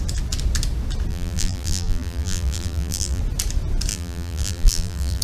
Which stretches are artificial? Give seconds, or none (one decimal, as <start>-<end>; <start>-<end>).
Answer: 1.1-3.2; 3.9-5.2